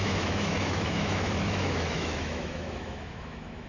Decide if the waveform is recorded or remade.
remade